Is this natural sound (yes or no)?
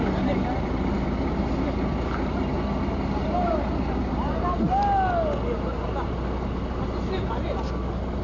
yes